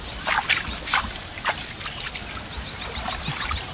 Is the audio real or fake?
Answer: real